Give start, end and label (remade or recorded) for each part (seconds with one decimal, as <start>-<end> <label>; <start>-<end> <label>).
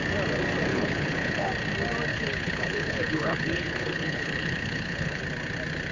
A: 0.0-0.7 recorded; 0.7-1.5 remade; 1.5-2.1 recorded; 2.1-5.2 remade; 5.2-5.9 recorded